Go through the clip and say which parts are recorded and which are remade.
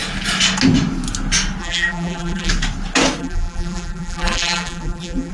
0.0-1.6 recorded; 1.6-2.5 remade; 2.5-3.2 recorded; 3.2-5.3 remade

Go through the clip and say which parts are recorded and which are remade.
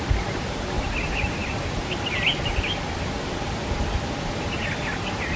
0.0-5.4 recorded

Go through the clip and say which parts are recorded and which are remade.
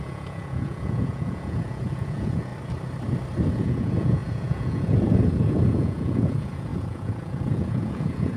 0.0-2.5 remade; 2.5-3.5 recorded; 3.5-8.4 remade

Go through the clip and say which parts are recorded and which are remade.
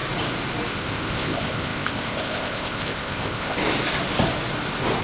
0.0-0.7 recorded; 0.7-3.6 remade; 3.6-5.0 recorded